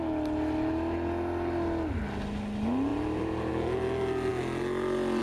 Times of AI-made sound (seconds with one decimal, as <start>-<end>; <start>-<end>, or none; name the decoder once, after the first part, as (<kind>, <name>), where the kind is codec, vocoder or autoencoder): 2.9-3.5 (vocoder, BigVGAN v2)

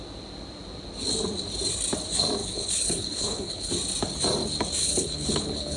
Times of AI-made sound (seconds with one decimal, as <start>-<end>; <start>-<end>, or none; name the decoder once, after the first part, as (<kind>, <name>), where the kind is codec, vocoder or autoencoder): 2.4-3.7 (codec, HILCodec); 4.8-5.8

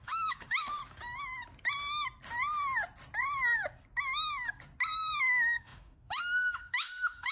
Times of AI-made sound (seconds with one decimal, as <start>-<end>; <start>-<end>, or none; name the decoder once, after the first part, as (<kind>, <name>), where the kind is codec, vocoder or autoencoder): 0.0-0.8 (autoencoder, DAC-VAE); 5.2-7.3